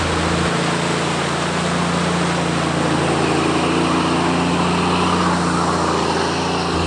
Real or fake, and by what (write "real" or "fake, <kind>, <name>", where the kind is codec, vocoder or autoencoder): real